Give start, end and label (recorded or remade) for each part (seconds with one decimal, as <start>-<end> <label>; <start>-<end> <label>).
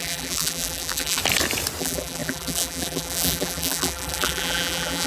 0.0-1.2 remade; 1.2-1.8 recorded; 1.8-5.1 remade